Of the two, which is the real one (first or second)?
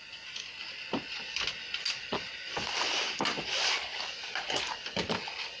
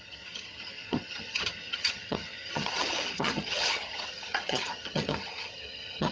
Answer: first